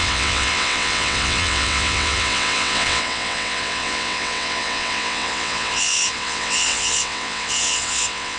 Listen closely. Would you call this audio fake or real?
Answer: fake